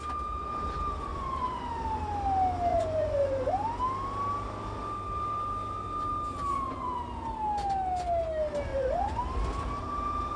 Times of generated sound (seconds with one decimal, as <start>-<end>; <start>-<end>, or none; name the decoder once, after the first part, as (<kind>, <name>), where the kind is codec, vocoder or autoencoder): 1.1-1.6 (vocoder, Vocos); 2.7-3.5; 6.5-7.3; 8.7-9.2